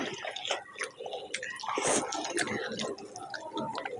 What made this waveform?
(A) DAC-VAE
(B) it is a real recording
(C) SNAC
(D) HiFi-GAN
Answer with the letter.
B